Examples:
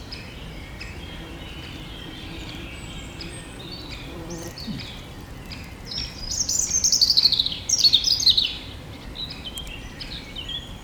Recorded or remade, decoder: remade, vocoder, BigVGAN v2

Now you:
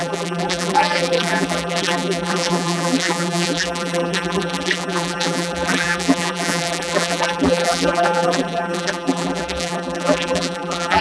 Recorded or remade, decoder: remade, vocoder, BigVGAN v2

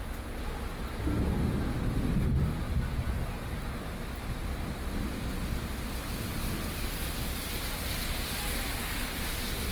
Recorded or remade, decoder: recorded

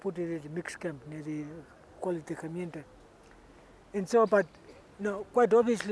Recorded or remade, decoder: recorded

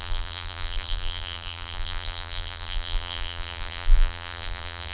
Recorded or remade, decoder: remade, vocoder, BigVGAN v2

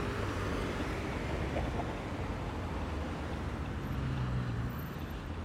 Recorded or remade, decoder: recorded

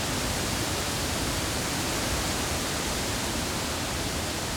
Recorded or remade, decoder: remade, vocoder, BigVGAN v2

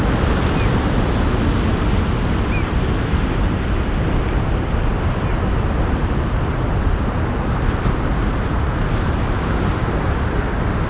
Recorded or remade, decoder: recorded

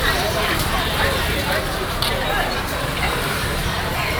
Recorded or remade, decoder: remade, vocoder, BigVGAN v2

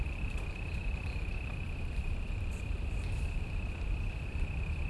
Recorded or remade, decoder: remade, vocoder, BigVGAN v2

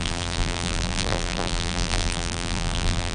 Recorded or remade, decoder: remade, vocoder, BigVGAN v2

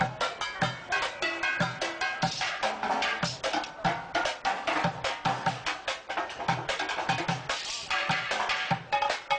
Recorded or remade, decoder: recorded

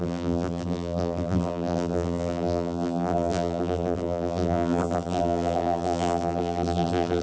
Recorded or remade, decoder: remade, vocoder, BigVGAN v2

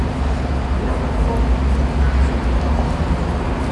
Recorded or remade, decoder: recorded